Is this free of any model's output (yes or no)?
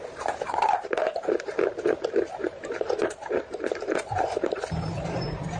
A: no